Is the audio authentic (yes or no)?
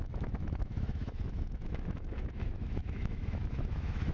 no